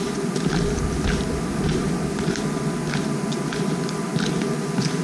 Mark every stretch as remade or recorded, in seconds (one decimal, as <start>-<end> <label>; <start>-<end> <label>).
0.0-5.0 recorded